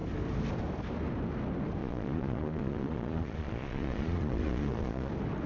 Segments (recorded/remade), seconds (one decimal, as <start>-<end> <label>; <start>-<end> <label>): 0.0-1.8 recorded; 1.8-5.1 remade; 5.1-5.5 recorded